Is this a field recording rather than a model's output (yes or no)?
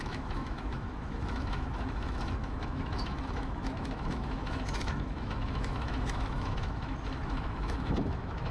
no